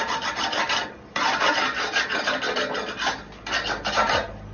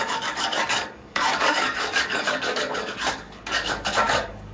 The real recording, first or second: first